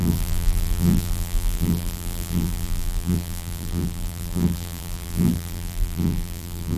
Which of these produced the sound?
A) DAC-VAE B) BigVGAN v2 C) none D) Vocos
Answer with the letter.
B